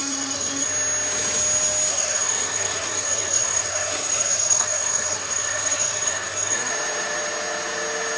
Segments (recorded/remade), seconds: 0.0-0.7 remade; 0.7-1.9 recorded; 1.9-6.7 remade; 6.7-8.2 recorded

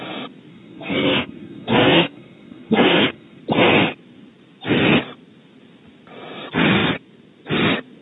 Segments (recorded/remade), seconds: 0.0-0.5 recorded; 0.5-3.4 remade; 3.4-8.0 recorded

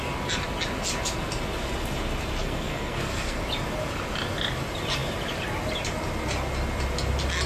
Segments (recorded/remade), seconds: 0.0-2.4 recorded; 2.4-3.4 remade; 3.4-7.5 recorded

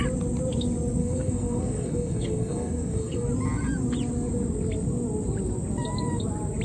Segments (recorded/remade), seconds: 0.0-1.0 recorded; 1.0-3.3 remade; 3.3-6.6 recorded

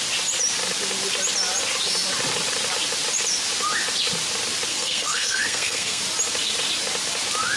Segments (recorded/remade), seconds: 0.0-4.7 recorded; 4.7-6.0 remade; 6.0-7.6 recorded

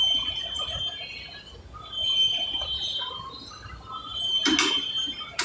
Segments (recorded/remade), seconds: 0.0-5.4 recorded